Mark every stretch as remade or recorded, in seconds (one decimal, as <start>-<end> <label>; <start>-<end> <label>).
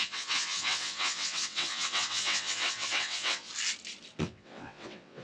0.0-3.5 remade; 3.5-4.2 recorded; 4.2-5.2 remade